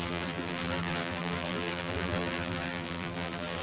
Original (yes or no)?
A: no